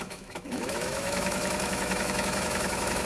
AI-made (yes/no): yes